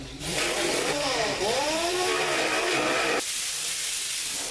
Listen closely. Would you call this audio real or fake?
fake